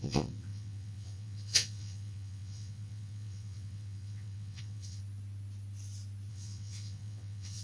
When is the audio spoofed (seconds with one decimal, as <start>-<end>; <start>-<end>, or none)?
0.0-5.0; 6.3-7.6